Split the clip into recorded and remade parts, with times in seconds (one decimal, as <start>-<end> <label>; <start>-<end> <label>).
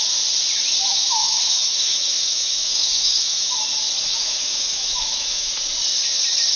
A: 0.0-0.9 recorded; 0.9-3.5 remade; 3.5-4.0 recorded; 4.0-5.6 remade; 5.6-6.6 recorded